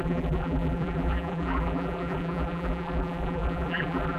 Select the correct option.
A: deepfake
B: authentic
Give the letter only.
A